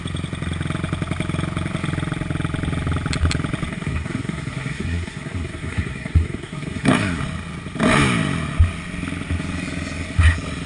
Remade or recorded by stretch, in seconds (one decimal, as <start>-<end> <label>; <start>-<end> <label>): 0.0-3.7 recorded; 3.7-7.2 remade; 7.2-10.7 recorded